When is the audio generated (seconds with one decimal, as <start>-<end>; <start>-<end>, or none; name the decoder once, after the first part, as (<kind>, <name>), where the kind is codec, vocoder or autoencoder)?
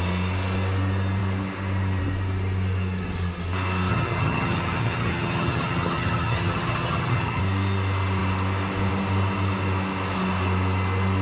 3.9-7.4 (vocoder, HiFi-GAN)